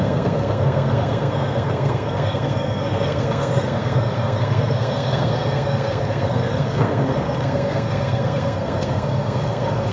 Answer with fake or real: fake